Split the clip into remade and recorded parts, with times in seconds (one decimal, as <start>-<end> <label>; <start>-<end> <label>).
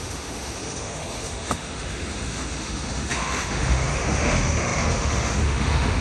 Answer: 0.0-6.0 remade